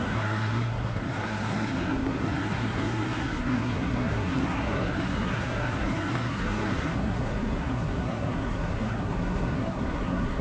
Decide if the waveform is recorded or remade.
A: remade